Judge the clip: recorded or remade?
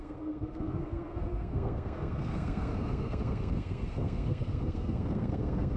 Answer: remade